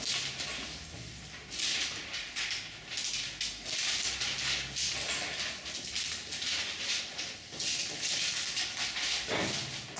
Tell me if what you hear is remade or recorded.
recorded